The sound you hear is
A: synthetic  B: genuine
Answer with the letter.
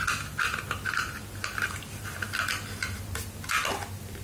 B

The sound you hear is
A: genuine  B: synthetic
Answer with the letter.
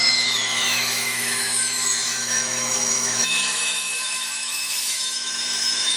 B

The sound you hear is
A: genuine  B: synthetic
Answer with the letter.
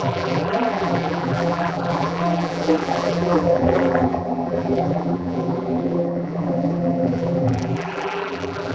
B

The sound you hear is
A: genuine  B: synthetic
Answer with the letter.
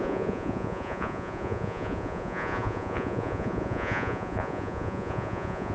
B